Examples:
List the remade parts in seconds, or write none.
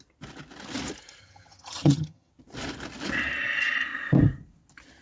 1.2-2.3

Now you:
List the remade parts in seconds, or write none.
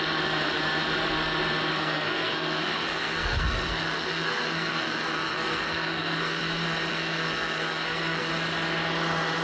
1.7-6.4; 6.9-8.3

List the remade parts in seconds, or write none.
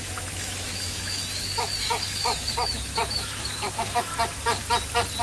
0.0-4.1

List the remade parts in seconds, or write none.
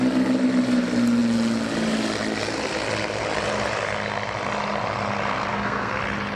5.5-6.0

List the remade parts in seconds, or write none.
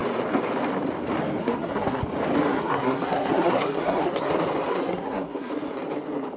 1.4-2.0; 2.5-4.3; 4.7-5.5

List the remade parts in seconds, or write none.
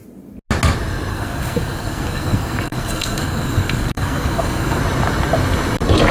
1.1-4.8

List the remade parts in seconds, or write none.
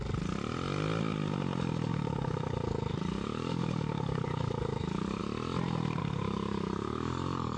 1.9-5.2; 6.0-7.6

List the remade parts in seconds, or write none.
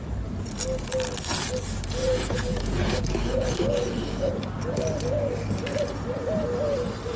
2.0-3.0